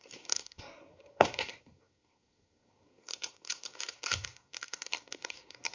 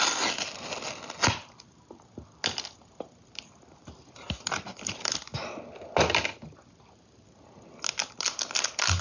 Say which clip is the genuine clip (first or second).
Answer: second